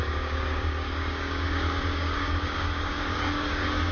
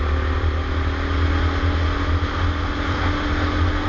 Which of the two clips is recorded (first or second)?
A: second